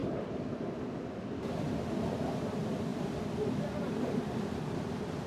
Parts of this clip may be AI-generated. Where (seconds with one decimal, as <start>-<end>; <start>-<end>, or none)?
none